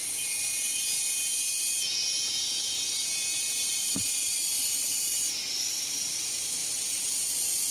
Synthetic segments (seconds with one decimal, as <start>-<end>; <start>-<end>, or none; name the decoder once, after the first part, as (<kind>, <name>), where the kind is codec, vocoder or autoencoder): 1.6-2.3 (vocoder, BigVGAN v2); 2.9-6.6; 7.1-7.7